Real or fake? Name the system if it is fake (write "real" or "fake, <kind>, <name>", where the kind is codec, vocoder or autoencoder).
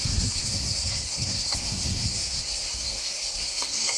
fake, codec, SNAC